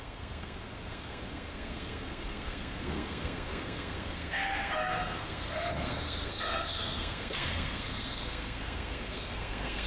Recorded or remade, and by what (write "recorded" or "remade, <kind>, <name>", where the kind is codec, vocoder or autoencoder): remade, codec, SNAC